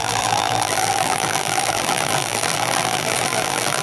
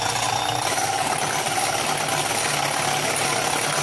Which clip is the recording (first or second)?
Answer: second